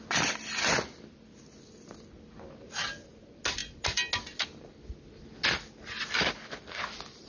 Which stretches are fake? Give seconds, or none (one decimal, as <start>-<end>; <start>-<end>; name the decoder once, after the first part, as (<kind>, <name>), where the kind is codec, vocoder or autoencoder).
none